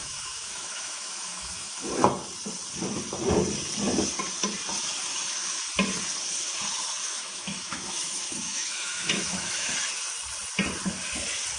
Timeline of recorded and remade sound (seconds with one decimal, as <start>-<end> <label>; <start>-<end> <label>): 0.0-1.9 remade; 1.9-5.1 recorded; 5.1-5.6 remade; 5.6-7.0 recorded; 7.0-9.7 remade; 9.7-11.6 recorded